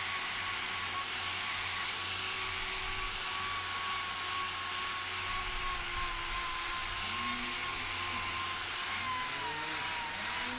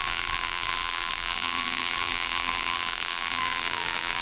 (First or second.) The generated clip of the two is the second